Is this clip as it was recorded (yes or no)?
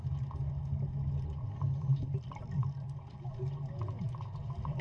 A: yes